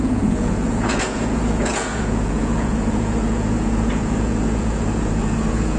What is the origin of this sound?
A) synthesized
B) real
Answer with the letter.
A